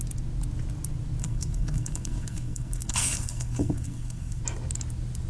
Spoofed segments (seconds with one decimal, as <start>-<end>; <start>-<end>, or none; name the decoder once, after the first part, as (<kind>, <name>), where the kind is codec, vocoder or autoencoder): 1.2-4.4 (codec, SNAC)